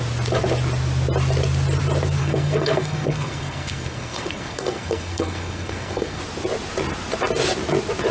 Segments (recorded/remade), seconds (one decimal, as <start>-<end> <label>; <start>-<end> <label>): 0.0-2.2 recorded; 2.2-6.2 remade; 6.2-8.1 recorded